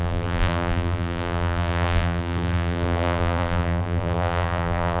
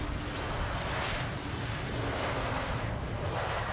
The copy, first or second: first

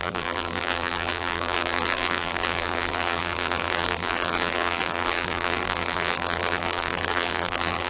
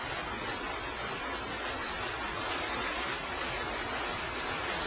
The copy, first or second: first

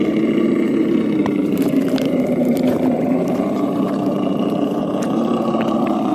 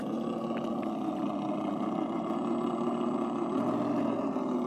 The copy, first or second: first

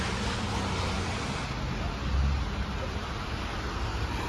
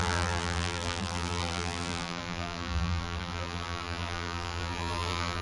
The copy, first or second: second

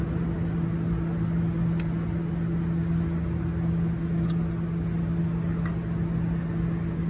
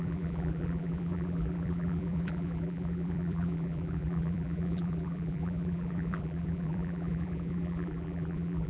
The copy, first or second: second